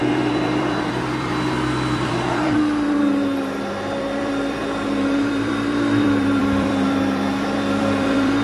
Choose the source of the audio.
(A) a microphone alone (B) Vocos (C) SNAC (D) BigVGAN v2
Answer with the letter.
D